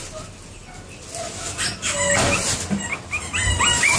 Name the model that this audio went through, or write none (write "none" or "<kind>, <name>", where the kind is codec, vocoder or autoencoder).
none